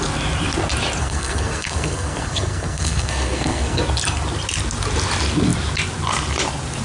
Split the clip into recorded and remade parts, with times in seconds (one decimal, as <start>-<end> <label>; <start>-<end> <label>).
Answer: 0.0-1.0 recorded; 1.0-3.8 remade; 3.8-6.8 recorded